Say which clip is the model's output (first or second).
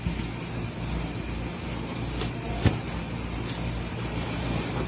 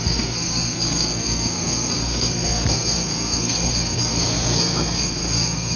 second